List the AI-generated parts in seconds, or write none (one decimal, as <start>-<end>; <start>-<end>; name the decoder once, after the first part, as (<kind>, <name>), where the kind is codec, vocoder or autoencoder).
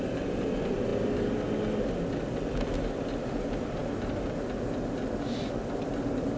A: none